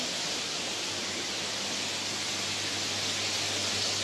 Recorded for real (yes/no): yes